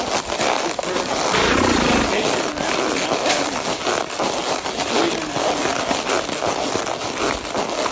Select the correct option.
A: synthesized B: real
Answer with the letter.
B